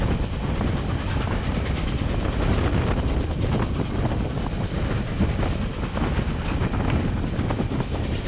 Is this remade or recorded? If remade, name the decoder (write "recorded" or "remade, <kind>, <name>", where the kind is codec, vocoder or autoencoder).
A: recorded